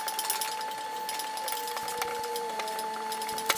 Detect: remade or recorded recorded